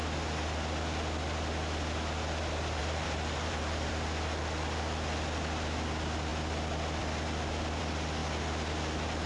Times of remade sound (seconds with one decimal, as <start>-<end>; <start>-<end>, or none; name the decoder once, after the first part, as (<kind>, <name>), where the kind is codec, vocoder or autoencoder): 2.8-3.9 (vocoder, BigVGAN v2)